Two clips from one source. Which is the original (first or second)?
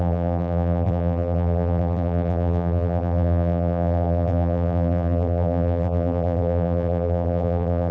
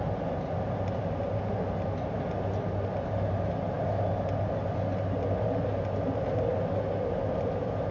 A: second